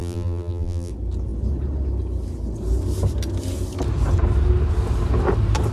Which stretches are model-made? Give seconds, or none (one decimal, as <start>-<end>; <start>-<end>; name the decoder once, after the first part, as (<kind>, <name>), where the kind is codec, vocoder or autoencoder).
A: 0.0-0.9 (vocoder, BigVGAN v2)